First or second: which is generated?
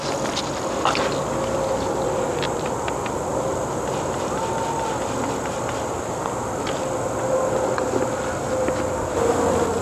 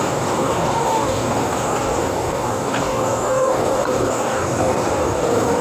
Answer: second